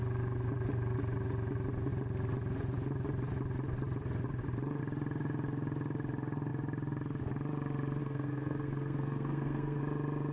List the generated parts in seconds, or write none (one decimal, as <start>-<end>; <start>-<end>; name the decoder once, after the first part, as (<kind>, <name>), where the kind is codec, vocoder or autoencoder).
8.0-9.8 (codec, SNAC)